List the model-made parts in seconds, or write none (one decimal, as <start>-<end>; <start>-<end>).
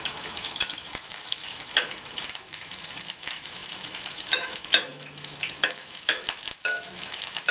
0.0-7.5